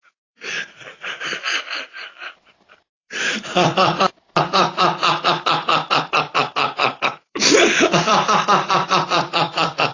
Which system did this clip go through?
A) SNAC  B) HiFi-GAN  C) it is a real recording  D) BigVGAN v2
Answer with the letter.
D